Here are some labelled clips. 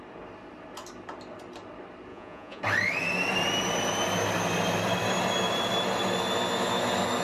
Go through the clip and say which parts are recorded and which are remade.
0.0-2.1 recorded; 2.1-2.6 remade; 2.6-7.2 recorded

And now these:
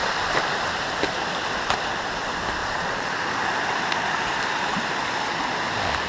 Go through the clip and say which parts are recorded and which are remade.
0.0-2.6 recorded; 2.6-3.1 remade; 3.1-6.1 recorded

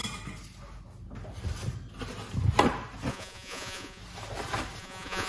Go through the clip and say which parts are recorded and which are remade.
0.0-3.1 recorded; 3.1-4.0 remade; 4.0-4.8 recorded; 4.8-5.3 remade

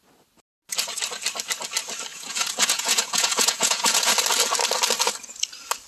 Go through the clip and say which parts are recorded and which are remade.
0.0-2.1 recorded; 2.1-4.1 remade; 4.1-5.9 recorded

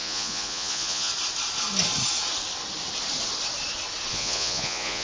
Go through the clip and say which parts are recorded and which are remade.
0.0-1.1 remade; 1.1-4.1 recorded; 4.1-5.0 remade

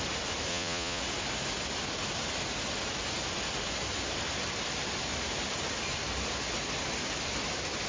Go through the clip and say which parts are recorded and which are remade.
0.0-0.5 recorded; 0.5-1.0 remade; 1.0-7.9 recorded

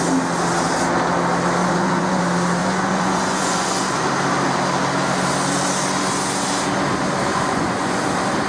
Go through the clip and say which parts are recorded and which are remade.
0.0-1.6 recorded; 1.6-2.2 remade; 2.2-2.6 recorded; 2.6-4.1 remade; 4.1-7.3 recorded; 7.3-8.0 remade; 8.0-8.5 recorded

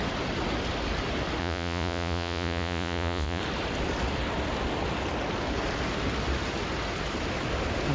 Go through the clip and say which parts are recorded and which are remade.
0.0-1.4 recorded; 1.4-3.4 remade; 3.4-7.9 recorded